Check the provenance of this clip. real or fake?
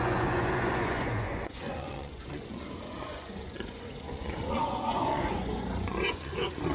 fake